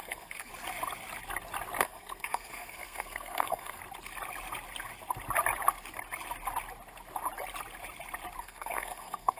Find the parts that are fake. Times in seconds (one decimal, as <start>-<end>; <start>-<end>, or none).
0.0-0.5; 1.8-3.8; 8.4-9.4